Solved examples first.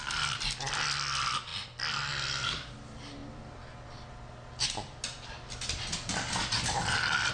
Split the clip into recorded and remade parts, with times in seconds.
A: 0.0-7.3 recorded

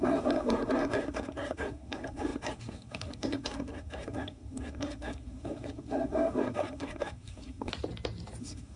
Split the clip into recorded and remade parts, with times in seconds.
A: 0.0-7.7 remade; 7.7-8.4 recorded; 8.4-8.8 remade

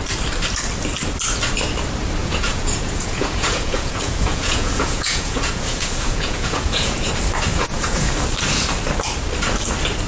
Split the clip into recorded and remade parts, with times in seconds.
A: 0.0-2.2 recorded; 2.2-7.1 remade; 7.1-7.5 recorded; 7.5-8.1 remade; 8.1-10.1 recorded

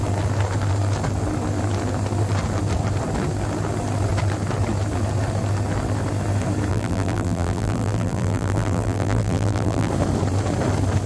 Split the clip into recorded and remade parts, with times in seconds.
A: 0.0-6.7 recorded; 6.7-9.9 remade; 9.9-11.1 recorded